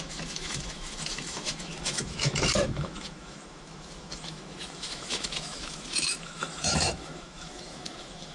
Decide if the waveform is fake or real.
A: fake